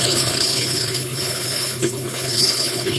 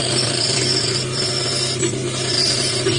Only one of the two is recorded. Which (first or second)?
second